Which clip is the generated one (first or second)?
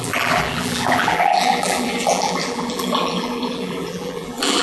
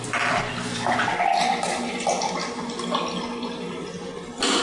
first